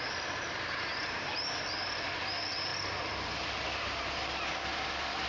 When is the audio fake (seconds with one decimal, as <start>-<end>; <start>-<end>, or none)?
0.0-5.3